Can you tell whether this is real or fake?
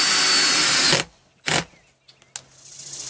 real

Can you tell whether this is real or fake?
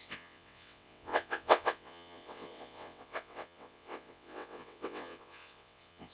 fake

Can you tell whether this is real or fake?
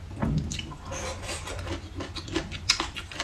real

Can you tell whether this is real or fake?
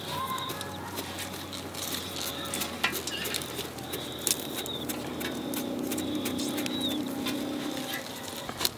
real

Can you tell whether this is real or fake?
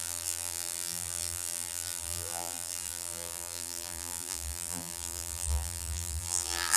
fake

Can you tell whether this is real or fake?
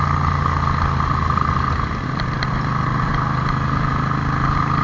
real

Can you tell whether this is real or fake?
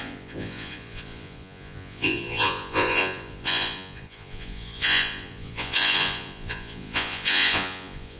fake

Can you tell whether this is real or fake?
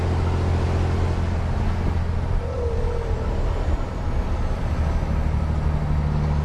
real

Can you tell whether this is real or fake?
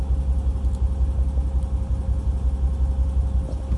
real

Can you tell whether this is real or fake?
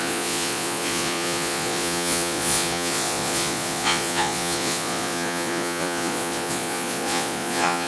fake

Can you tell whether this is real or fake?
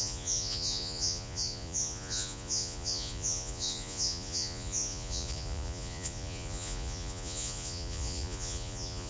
fake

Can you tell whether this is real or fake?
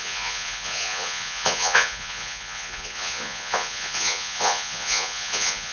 fake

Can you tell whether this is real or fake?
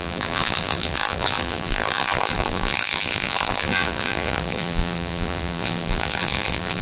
fake